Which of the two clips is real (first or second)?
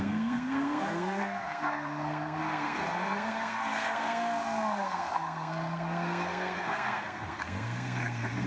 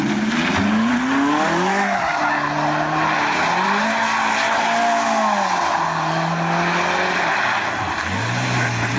second